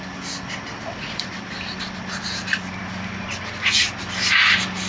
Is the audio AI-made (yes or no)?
no